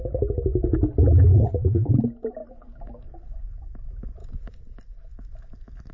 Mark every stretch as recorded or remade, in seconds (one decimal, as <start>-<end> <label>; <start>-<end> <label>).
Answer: 0.0-1.3 recorded; 1.3-1.9 remade; 1.9-5.9 recorded